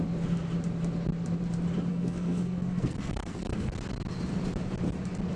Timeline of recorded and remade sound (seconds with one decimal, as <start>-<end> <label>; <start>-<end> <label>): 0.0-1.9 recorded; 1.9-3.7 remade; 3.7-5.4 recorded

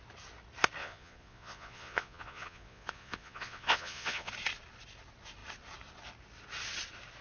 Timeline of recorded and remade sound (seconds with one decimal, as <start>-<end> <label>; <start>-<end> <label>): 0.0-0.8 recorded; 0.8-4.3 remade; 4.3-7.2 recorded

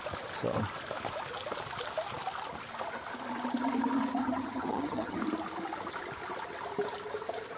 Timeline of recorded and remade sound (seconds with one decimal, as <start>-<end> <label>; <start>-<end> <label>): 0.0-4.2 recorded; 4.2-5.2 remade; 5.2-7.6 recorded

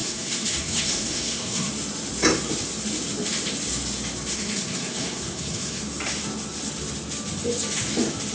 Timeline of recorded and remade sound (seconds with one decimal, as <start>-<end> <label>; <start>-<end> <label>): 0.0-1.7 remade; 1.7-4.3 recorded; 4.3-5.8 remade; 5.8-8.3 recorded

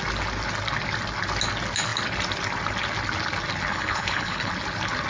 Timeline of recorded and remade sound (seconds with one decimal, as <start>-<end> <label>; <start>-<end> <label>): 0.0-3.7 recorded; 3.7-4.5 remade; 4.5-5.1 recorded

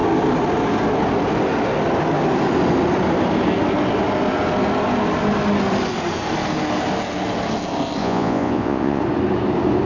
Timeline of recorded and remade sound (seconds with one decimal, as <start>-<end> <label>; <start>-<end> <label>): 0.0-8.0 recorded; 8.0-9.0 remade; 9.0-9.9 recorded

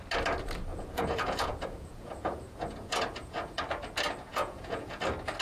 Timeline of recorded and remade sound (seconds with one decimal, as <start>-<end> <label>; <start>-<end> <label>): 0.0-0.7 recorded; 0.7-3.6 remade; 3.6-4.3 recorded; 4.3-5.0 remade; 5.0-5.4 recorded